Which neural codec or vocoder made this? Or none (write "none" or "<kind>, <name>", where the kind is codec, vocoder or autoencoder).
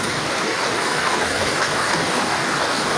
codec, DAC